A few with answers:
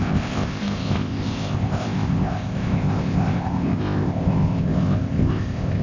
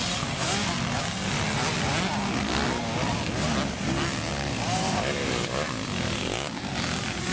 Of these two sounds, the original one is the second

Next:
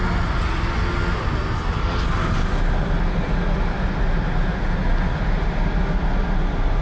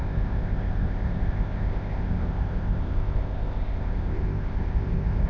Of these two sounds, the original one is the first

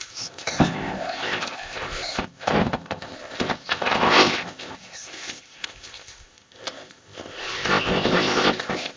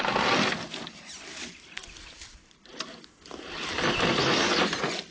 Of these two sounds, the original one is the second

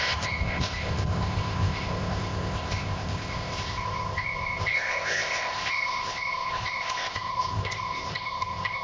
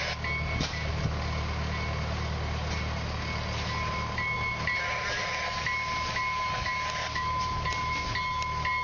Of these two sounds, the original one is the second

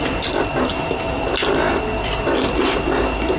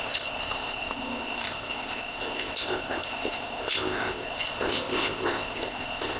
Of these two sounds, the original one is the first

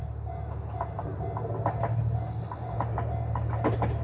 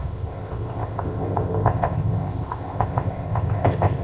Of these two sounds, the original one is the first